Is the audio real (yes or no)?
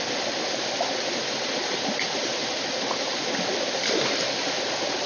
yes